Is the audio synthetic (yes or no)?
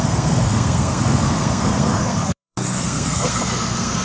yes